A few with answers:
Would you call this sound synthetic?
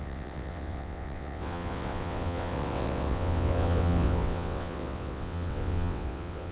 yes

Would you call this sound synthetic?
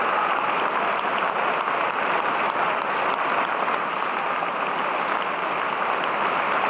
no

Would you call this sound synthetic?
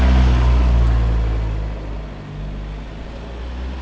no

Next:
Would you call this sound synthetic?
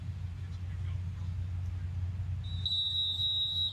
no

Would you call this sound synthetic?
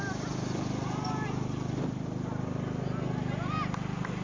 no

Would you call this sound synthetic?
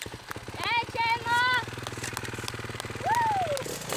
no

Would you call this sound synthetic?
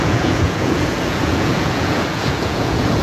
yes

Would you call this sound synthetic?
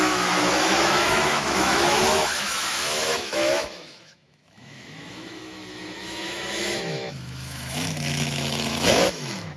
yes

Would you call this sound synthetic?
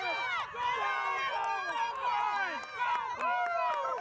no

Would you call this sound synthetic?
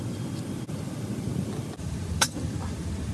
no